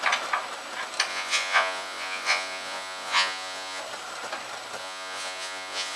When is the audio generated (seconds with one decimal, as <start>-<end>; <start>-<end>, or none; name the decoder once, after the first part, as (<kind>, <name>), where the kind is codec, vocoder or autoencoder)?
1.1-3.8 (vocoder, Vocos); 4.8-6.0